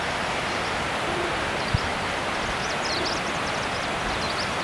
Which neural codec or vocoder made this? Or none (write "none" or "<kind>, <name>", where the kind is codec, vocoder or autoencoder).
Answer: none